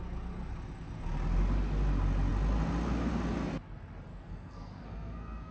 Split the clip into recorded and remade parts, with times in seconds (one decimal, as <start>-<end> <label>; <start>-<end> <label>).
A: 0.0-4.1 recorded; 4.1-5.5 remade